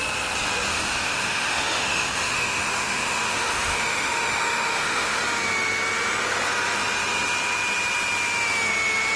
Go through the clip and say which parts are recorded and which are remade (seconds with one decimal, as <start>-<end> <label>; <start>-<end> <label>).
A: 0.0-0.7 recorded; 0.7-5.2 remade; 5.2-9.2 recorded